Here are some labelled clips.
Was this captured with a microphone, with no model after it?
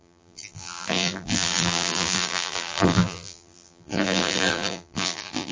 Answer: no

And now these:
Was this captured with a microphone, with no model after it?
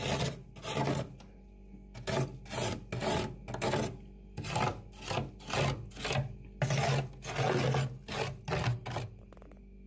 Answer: yes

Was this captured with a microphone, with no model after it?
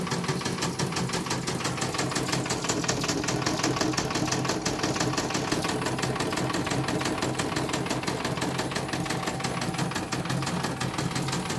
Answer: yes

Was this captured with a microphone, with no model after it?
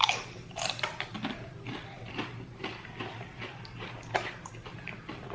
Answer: no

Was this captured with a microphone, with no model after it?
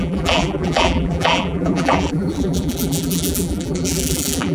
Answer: no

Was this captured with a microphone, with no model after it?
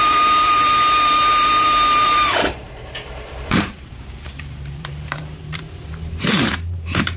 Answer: no